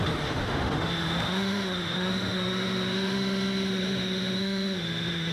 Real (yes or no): no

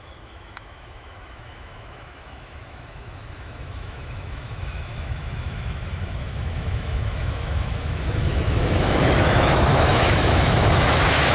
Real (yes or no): no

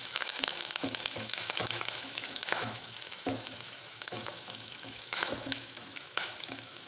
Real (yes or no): no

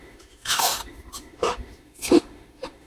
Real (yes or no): no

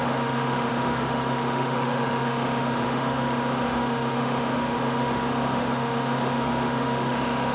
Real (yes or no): no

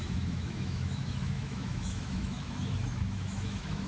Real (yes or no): no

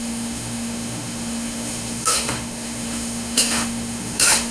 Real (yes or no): no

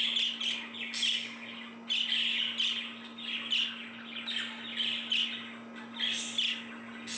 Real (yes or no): yes